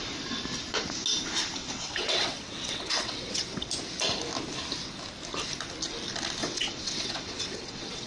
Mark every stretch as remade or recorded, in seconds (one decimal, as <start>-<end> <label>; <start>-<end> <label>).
0.0-1.6 recorded; 1.6-3.7 remade; 3.7-6.4 recorded; 6.4-8.1 remade